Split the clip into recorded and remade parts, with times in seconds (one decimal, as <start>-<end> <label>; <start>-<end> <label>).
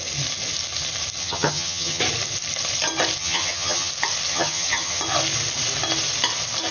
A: 0.0-1.2 recorded; 1.2-2.0 remade; 2.0-3.2 recorded; 3.2-3.9 remade; 3.9-4.3 recorded; 4.3-5.0 remade; 5.0-6.7 recorded